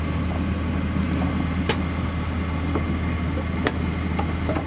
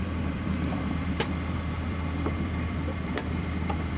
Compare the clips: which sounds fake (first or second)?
second